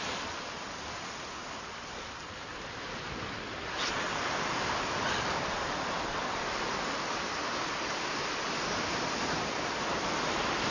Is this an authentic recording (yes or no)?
yes